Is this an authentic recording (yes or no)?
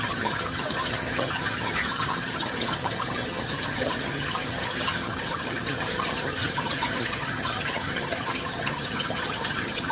no